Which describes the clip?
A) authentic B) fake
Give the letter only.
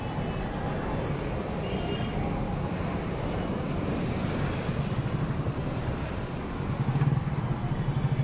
A